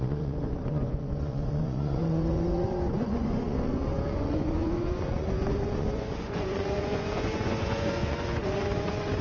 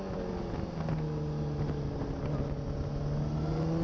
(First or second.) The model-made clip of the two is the first